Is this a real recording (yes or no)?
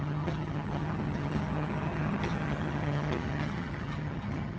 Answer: no